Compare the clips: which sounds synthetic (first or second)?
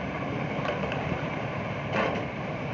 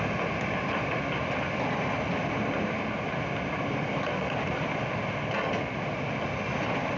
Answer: first